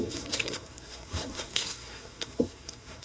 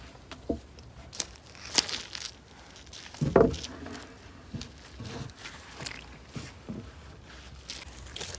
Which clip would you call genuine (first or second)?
second